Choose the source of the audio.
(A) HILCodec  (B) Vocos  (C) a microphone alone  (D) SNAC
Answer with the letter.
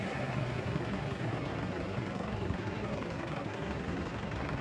D